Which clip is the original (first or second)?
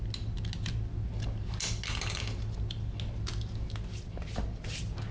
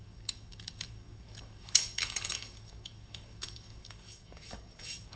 first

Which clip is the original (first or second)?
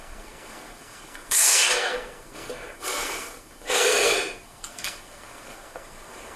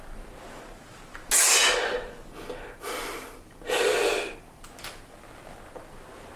second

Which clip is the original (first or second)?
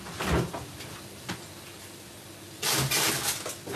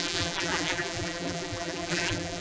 first